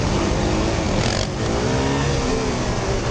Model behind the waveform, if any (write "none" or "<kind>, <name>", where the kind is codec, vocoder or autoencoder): none